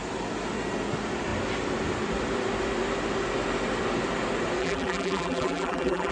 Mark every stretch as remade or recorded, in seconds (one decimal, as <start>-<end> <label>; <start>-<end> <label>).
0.0-4.6 recorded; 4.6-6.1 remade